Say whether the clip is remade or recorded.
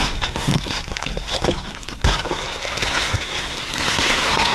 remade